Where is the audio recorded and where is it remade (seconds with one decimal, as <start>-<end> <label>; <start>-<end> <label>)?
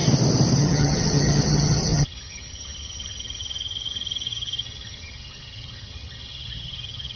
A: 0.0-0.6 recorded; 0.6-7.2 remade